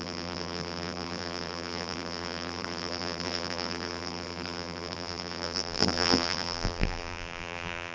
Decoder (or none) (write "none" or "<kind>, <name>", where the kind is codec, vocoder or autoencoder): vocoder, BigVGAN v2